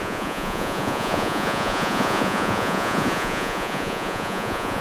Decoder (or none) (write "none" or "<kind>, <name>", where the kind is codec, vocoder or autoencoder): vocoder, Vocos